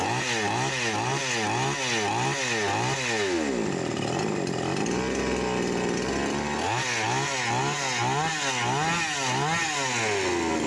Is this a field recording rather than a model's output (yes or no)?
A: yes